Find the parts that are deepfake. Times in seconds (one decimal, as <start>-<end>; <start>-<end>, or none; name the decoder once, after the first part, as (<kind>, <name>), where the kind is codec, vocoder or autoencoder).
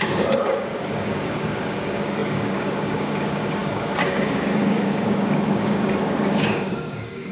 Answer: 0.0-7.3 (codec, DAC)